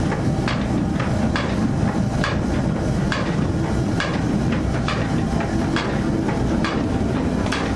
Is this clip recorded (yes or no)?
yes